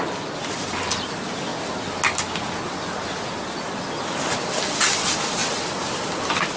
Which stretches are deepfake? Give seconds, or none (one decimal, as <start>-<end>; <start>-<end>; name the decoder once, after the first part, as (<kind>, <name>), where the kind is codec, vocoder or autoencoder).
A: none

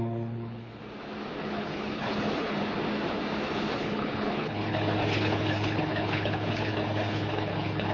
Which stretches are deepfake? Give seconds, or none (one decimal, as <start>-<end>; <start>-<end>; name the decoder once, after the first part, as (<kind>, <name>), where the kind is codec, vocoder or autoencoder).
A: 0.0-0.8 (codec, HILCodec); 1.4-2.6; 3.7-7.9

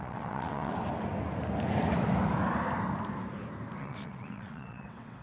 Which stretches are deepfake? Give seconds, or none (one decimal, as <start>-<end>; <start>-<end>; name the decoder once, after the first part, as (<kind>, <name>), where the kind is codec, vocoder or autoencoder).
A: 0.0-0.7 (vocoder, WaveNeXt); 3.8-5.2

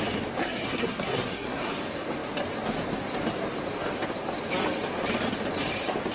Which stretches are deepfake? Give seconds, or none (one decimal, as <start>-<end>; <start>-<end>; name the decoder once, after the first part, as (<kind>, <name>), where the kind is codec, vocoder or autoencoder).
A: 0.4-1.7 (codec, SNAC)

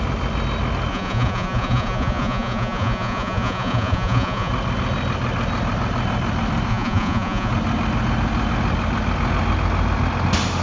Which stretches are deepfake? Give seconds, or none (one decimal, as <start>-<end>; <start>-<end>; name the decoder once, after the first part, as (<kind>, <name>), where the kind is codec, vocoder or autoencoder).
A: 0.9-4.5 (vocoder, Vocos); 6.7-7.5